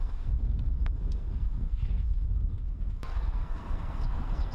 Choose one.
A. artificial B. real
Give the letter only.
A